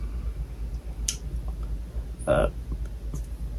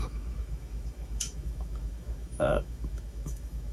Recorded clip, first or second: first